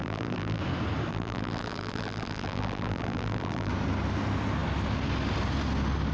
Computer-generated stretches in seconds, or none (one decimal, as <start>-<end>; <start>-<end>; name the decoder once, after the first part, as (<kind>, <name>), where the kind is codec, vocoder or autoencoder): 0.0-0.6 (vocoder, BigVGAN v2); 1.1-3.7